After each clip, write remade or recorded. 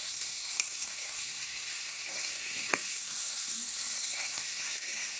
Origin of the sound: remade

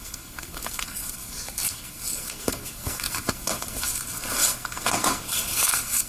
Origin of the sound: remade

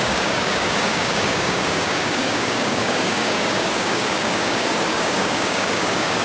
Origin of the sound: remade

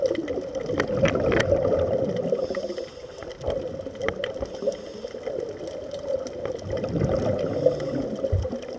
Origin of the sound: recorded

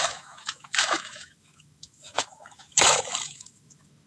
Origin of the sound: remade